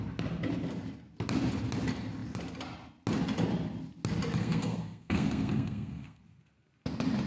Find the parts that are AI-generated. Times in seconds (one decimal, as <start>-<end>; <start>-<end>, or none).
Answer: 4.4-6.2